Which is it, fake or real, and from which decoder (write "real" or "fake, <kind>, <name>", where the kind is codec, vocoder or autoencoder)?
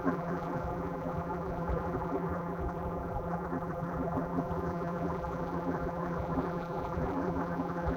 fake, vocoder, BigVGAN v2